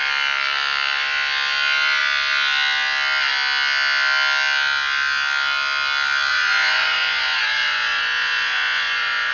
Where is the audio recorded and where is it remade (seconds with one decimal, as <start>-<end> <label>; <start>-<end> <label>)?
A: 0.0-6.3 recorded; 6.3-9.3 remade